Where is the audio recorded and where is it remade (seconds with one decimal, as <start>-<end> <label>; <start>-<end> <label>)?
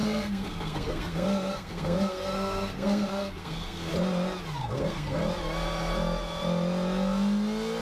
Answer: 0.0-3.9 remade; 3.9-4.6 recorded; 4.6-5.2 remade; 5.2-7.8 recorded